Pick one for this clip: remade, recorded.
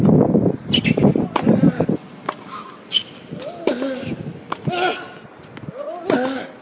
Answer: recorded